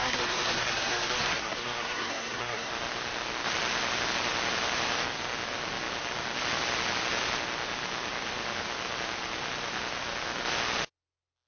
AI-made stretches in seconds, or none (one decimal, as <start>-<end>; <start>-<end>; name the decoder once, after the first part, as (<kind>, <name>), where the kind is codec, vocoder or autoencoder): 0.0-2.7 (codec, SNAC)

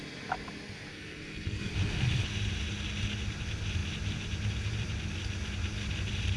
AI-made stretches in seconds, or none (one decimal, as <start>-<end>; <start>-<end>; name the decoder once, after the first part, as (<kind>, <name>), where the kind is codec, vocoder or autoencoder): 0.9-1.7 (codec, SNAC)

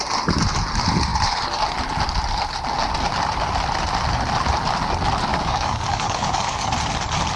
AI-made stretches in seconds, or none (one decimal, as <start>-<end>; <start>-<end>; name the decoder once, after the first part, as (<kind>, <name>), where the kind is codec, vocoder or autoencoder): 5.3-6.7 (codec, DAC)

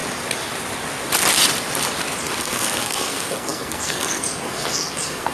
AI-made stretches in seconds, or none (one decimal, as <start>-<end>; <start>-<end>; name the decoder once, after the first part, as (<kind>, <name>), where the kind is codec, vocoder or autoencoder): 2.4-5.3 (codec, SNAC)

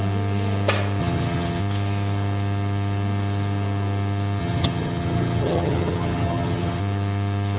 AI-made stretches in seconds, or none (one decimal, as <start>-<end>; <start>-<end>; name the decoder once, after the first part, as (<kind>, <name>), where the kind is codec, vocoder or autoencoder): 1.0-1.6 (vocoder, HiFi-GAN); 4.4-6.8